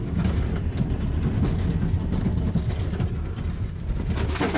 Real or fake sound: real